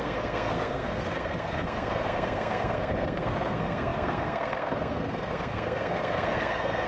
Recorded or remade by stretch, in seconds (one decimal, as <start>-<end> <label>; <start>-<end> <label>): 0.0-6.9 remade